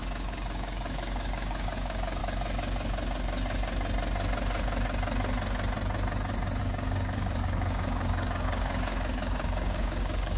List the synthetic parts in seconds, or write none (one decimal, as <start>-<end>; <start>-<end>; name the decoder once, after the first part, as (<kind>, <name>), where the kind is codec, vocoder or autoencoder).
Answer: 0.0-2.2 (codec, DAC); 6.6-10.4